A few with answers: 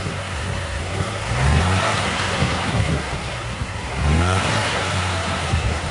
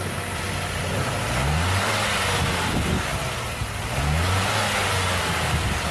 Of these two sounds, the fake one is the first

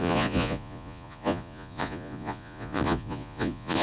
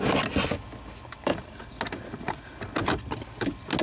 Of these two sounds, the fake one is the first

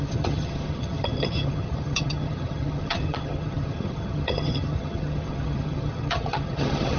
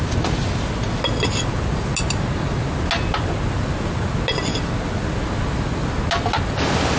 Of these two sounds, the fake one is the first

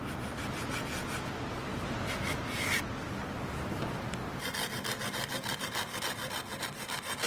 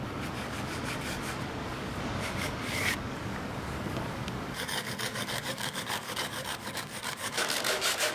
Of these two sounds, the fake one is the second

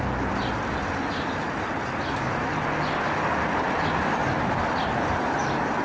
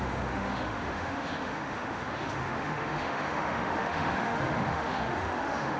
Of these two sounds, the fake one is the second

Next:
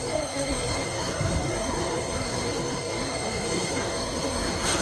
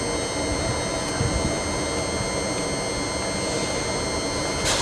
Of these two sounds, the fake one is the first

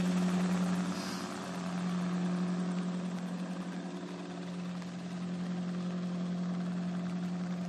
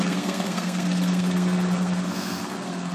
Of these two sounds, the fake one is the second